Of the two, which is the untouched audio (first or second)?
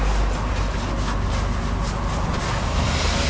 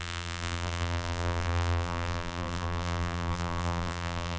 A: first